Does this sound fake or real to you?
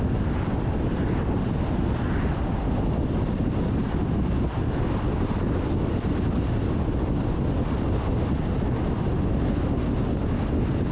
real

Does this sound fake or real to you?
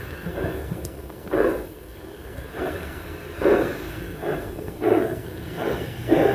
fake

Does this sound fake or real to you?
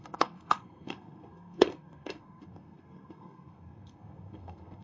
fake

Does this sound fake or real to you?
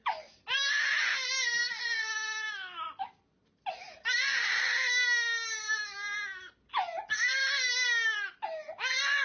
real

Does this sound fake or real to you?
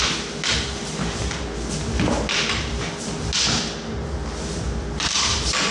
real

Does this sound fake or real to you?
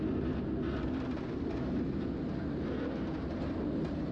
real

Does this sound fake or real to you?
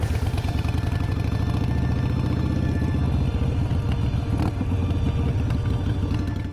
real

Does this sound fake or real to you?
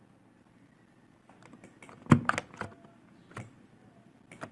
real